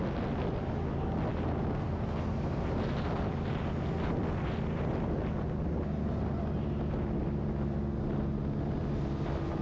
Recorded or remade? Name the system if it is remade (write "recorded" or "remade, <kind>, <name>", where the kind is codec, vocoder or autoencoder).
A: recorded